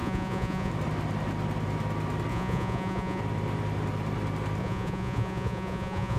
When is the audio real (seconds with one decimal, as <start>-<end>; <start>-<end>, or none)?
0.7-2.3; 3.2-4.6